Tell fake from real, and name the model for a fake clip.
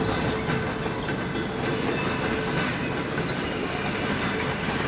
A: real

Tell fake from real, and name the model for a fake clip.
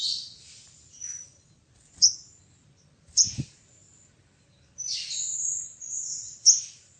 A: fake, vocoder, BigVGAN v2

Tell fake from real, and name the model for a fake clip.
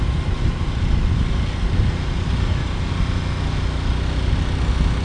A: real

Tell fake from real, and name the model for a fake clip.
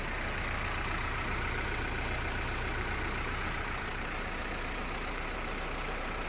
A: fake, vocoder, BigVGAN v2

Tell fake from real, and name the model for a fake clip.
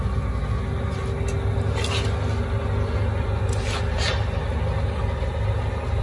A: real